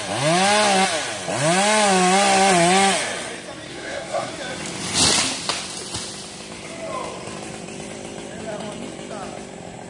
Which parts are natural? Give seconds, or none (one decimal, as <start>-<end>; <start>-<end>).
0.0-3.7; 4.3-9.9